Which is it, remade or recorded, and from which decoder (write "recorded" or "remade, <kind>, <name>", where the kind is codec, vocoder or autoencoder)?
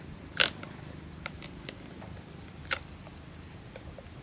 recorded